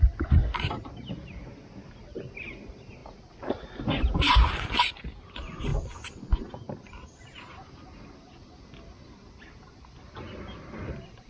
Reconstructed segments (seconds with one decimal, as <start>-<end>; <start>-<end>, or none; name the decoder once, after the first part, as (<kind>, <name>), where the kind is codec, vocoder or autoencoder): none